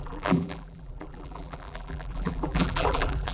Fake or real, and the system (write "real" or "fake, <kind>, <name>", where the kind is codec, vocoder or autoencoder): fake, vocoder, BigVGAN v2